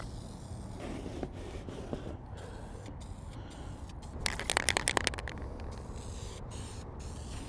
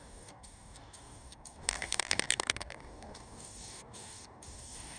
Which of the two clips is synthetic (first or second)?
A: second